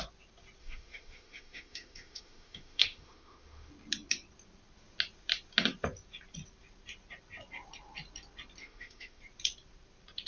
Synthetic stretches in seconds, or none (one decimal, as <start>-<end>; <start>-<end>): 0.6-3.7; 8.6-9.2